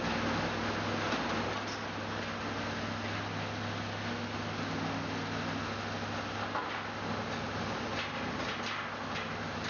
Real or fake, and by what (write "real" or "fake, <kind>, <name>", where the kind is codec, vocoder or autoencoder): real